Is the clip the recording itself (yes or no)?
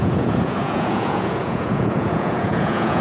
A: no